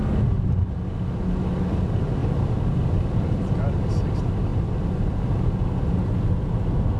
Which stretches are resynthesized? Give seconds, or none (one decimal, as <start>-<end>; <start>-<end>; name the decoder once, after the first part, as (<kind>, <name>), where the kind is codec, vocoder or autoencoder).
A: none